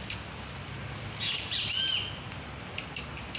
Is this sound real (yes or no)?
yes